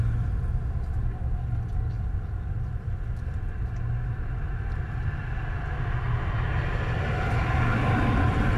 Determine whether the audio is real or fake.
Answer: real